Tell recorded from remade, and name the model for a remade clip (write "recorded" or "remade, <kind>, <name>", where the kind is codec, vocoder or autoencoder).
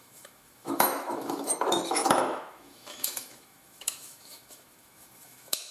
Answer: remade, autoencoder, DAC-VAE